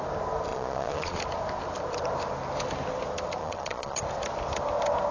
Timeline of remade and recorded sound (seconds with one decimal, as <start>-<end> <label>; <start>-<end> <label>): 0.0-0.5 recorded; 0.5-1.2 remade; 1.2-3.4 recorded; 3.4-4.0 remade; 4.0-5.1 recorded